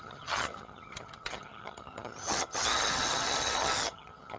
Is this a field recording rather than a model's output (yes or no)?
no